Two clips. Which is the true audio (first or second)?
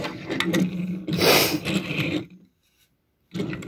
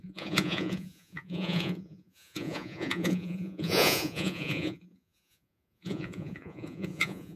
first